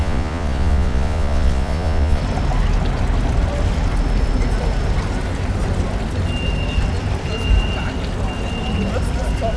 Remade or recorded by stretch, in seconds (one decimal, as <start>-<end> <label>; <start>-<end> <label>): 0.0-2.2 remade; 2.2-9.6 recorded